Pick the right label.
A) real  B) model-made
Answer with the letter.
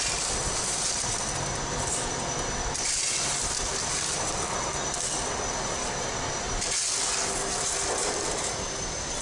A